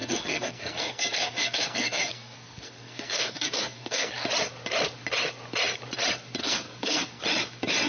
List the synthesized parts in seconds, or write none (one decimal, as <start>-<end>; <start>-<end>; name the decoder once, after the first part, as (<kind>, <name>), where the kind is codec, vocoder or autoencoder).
0.0-4.1 (codec, SNAC); 6.4-7.2